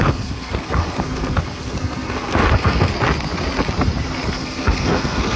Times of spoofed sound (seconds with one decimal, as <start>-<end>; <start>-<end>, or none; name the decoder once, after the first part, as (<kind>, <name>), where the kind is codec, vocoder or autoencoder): 0.0-2.9 (codec, SNAC); 4.3-5.4